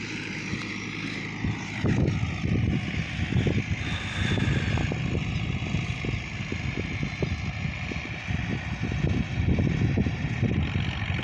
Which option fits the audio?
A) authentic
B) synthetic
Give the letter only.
A